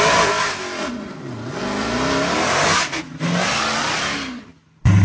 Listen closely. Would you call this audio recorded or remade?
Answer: recorded